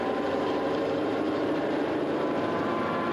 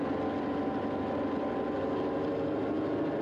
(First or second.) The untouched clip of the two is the second